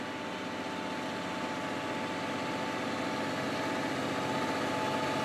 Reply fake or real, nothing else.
real